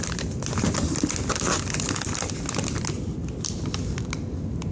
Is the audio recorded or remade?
recorded